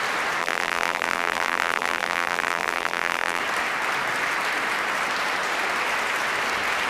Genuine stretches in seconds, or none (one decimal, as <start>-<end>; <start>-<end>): 0.0-0.4; 3.4-6.9